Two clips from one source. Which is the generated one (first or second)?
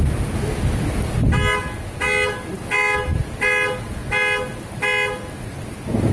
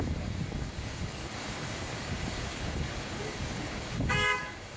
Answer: second